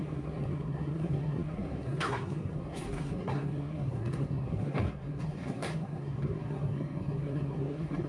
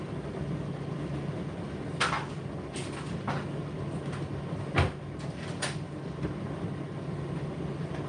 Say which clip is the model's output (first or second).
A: first